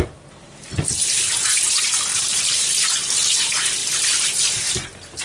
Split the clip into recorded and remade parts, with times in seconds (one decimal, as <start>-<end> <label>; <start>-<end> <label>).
0.0-2.1 recorded; 2.1-2.8 remade; 2.8-3.8 recorded; 3.8-4.8 remade; 4.8-5.2 recorded